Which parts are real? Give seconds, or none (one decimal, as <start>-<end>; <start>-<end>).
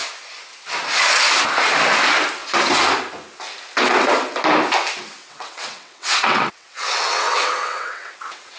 0.0-5.2